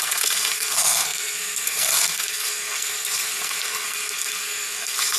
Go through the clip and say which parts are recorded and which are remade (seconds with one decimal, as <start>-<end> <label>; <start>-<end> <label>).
0.0-5.2 remade